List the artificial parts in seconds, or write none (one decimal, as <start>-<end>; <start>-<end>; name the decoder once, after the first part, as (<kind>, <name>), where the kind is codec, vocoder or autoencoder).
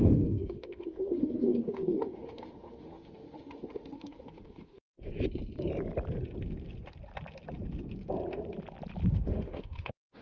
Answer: 0.0-5.1 (autoencoder, DAC-VAE); 9.1-10.2